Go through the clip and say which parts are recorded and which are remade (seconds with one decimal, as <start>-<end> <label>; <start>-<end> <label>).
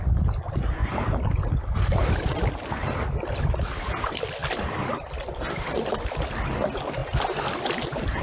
0.0-0.8 recorded; 0.8-3.1 remade; 3.1-4.4 recorded; 4.4-6.0 remade; 6.0-8.2 recorded